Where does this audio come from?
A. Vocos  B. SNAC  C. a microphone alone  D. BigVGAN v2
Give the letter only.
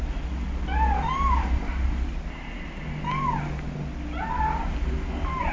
C